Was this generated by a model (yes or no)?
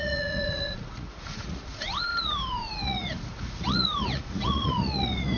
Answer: yes